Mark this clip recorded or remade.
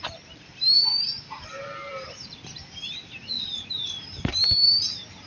remade